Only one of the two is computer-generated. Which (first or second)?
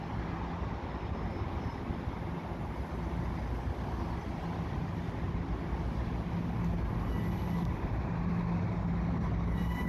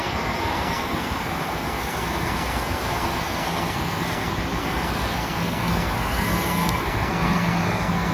second